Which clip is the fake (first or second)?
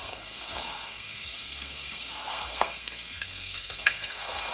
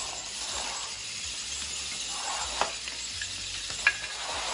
first